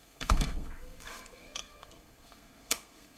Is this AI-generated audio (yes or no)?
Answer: yes